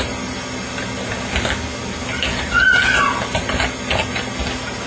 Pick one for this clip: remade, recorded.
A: recorded